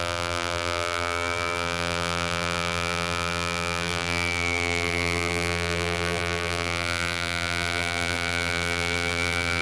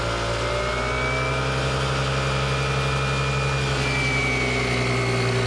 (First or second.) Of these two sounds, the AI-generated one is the first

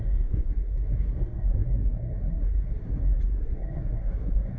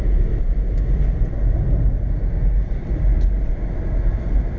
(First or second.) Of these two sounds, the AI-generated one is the first